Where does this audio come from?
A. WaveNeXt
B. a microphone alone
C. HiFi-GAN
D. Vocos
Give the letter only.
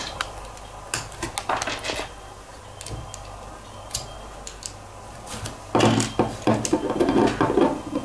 B